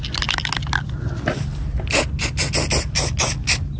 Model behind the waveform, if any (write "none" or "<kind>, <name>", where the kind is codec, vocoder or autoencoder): none